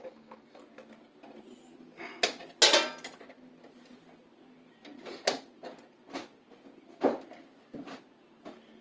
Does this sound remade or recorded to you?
recorded